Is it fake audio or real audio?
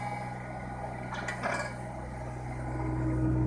real